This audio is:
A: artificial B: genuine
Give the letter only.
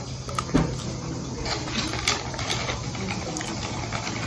B